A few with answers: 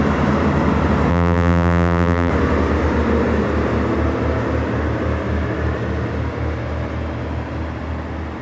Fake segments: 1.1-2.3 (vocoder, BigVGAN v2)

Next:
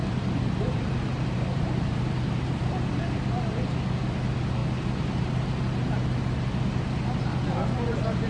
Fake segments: 0.0-2.6 (vocoder, BigVGAN v2)

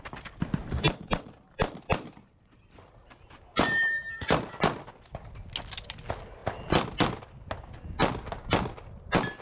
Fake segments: 0.6-4.5 (vocoder, BigVGAN v2)

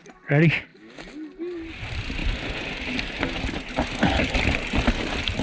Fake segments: none

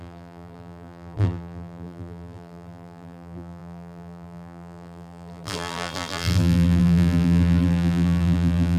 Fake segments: 0.0-8.8 (vocoder, BigVGAN v2)